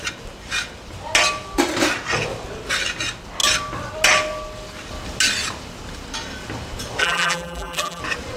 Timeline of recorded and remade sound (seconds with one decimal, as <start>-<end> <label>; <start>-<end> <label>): 0.0-7.0 recorded; 7.0-8.0 remade; 8.0-8.4 recorded